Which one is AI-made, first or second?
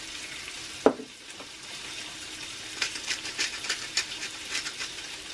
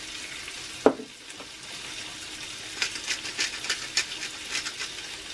first